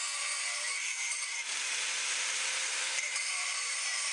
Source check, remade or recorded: remade